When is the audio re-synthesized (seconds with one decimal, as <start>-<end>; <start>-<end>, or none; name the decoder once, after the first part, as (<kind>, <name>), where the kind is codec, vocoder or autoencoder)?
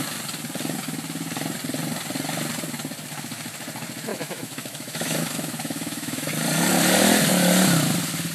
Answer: 4.1-6.3 (autoencoder, DAC-VAE)